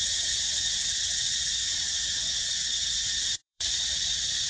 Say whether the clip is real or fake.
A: fake